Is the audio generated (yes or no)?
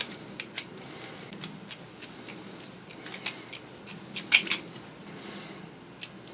no